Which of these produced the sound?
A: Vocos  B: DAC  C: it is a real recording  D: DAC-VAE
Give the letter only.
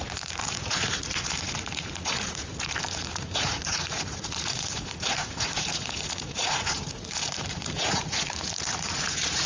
A